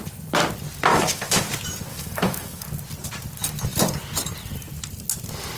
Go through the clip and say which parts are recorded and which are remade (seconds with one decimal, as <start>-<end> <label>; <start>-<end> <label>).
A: 0.0-0.9 recorded; 0.9-1.4 remade; 1.4-1.9 recorded; 1.9-2.6 remade; 2.6-5.6 recorded

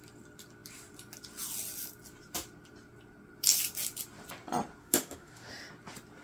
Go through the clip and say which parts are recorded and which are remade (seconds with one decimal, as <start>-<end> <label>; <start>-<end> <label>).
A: 0.0-4.8 recorded; 4.8-5.5 remade; 5.5-6.2 recorded

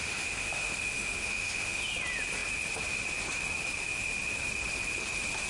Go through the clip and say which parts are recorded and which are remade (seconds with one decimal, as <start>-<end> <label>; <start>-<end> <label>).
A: 0.0-1.8 remade; 1.8-5.5 recorded

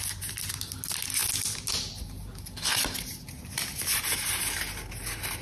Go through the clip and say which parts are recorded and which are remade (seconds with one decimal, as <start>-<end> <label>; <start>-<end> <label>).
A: 0.0-5.4 recorded

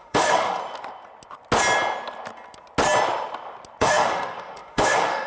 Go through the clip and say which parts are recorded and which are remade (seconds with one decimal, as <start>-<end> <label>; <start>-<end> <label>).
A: 0.0-0.6 remade; 0.6-3.8 recorded; 3.8-5.3 remade

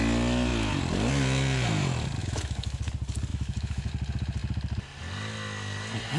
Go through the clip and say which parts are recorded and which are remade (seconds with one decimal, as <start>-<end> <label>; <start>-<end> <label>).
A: 0.0-2.2 recorded; 2.2-2.8 remade; 2.8-3.3 recorded; 3.3-3.9 remade; 3.9-6.2 recorded